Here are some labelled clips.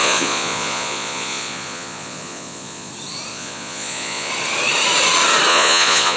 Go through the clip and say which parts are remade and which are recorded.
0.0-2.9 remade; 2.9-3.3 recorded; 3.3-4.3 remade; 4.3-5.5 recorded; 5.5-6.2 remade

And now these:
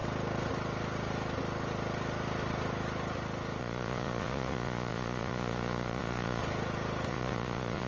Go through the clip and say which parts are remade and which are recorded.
0.0-3.6 recorded; 3.6-6.4 remade; 6.4-7.1 recorded; 7.1-7.9 remade

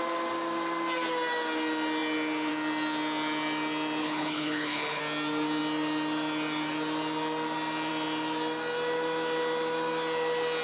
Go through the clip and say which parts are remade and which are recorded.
0.0-4.0 recorded; 4.0-5.0 remade; 5.0-10.6 recorded

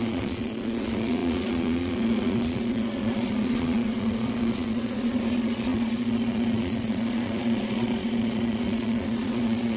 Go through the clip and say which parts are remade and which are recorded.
0.0-9.8 remade

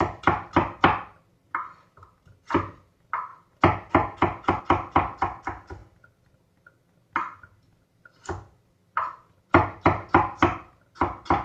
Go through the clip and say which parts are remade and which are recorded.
0.0-11.4 recorded